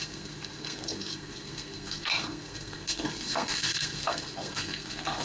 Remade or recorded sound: remade